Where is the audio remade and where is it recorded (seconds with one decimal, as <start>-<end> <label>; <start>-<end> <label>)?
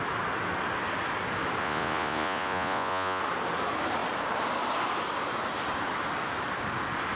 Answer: 0.0-1.6 recorded; 1.6-3.2 remade; 3.2-7.2 recorded